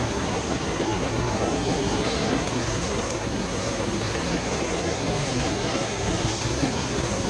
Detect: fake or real fake